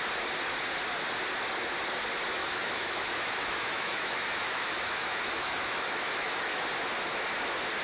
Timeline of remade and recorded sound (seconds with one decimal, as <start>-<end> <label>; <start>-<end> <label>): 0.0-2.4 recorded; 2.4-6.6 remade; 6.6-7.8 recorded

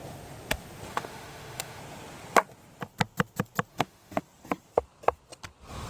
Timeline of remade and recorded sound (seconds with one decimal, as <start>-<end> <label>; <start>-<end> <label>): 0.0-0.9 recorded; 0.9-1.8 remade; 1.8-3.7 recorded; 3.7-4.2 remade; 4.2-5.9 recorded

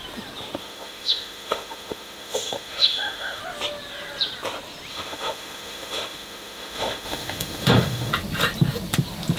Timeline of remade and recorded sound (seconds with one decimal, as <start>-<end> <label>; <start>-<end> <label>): 0.0-0.6 recorded; 0.6-3.4 remade; 3.4-4.9 recorded; 4.9-8.1 remade; 8.1-9.4 recorded